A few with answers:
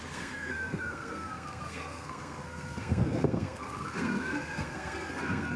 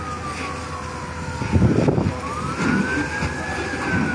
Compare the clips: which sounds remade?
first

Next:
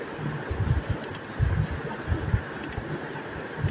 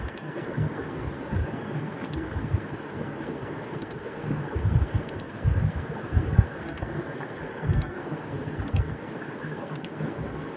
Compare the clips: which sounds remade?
second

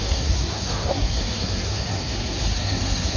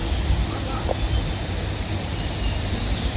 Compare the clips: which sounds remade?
first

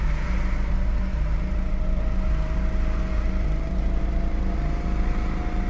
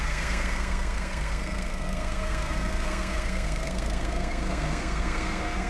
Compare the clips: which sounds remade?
second